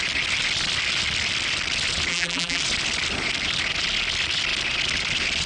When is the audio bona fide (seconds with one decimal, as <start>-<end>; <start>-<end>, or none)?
0.0-2.1; 2.6-5.5